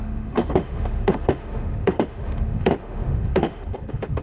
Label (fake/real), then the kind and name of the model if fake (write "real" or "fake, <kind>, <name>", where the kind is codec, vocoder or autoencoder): fake, autoencoder, DAC-VAE